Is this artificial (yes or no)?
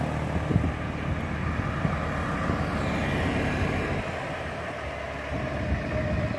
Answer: no